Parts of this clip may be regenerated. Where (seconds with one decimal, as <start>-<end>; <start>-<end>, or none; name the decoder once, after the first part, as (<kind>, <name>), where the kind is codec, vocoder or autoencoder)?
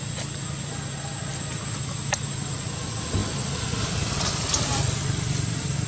none